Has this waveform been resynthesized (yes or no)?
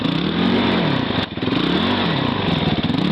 yes